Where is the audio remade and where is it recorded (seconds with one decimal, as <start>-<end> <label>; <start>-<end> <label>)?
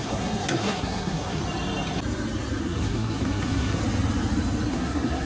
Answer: 0.0-1.4 remade; 1.4-2.6 recorded; 2.6-3.8 remade; 3.8-4.7 recorded; 4.7-5.3 remade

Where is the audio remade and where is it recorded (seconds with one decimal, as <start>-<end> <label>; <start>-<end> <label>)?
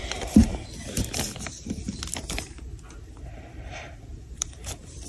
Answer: 0.0-0.5 remade; 0.5-2.2 recorded; 2.2-5.1 remade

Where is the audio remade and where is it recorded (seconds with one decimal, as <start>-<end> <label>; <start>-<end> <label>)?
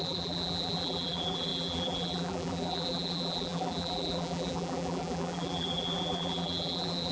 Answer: 0.0-7.1 remade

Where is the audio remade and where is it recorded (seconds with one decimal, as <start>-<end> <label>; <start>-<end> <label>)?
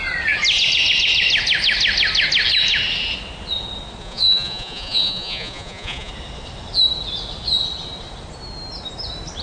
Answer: 0.0-4.0 recorded; 4.0-6.1 remade; 6.1-9.4 recorded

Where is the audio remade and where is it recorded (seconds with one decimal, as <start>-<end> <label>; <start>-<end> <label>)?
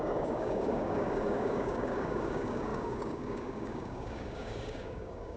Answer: 0.0-5.4 remade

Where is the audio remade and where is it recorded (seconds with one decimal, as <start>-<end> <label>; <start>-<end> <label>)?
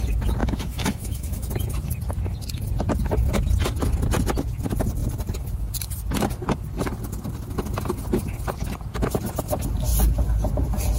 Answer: 0.0-0.4 recorded; 0.4-1.5 remade; 1.5-11.0 recorded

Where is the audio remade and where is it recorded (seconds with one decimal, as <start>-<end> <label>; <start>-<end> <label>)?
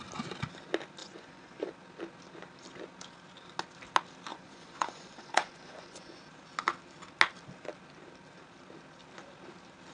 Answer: 0.0-1.0 recorded; 1.0-1.7 remade; 1.7-4.3 recorded; 4.3-6.2 remade; 6.2-9.9 recorded